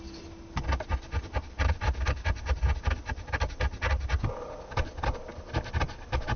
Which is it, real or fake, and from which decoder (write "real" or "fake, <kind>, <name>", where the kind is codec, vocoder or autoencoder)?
real